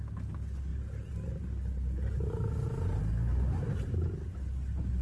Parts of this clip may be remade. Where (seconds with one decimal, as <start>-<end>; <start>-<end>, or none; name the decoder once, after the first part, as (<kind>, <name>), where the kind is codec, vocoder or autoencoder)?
none